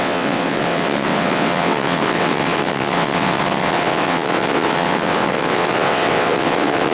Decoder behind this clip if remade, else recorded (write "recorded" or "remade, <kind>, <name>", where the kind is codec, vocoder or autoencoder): remade, vocoder, WaveNeXt